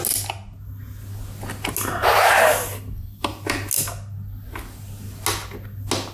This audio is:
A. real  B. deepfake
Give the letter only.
A